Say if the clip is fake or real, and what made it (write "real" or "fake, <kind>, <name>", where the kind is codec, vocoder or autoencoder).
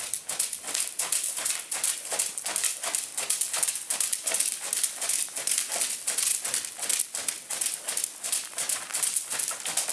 real